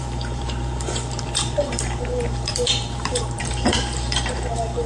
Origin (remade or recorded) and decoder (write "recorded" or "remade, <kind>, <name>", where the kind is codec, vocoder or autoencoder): remade, vocoder, BigVGAN v2